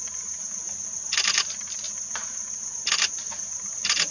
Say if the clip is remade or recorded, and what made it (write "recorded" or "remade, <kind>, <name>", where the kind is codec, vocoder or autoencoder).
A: recorded